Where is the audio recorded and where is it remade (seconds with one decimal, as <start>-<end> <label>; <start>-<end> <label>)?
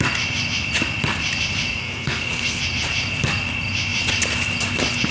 0.0-1.7 recorded; 1.7-2.6 remade; 2.6-5.1 recorded